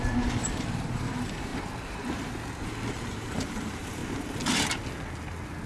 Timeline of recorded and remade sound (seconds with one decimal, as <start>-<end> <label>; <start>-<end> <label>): 0.0-1.5 remade; 1.5-2.9 recorded; 2.9-4.0 remade; 4.0-5.7 recorded